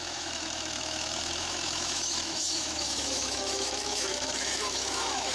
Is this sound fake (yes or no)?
yes